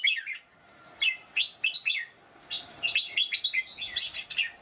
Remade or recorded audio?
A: recorded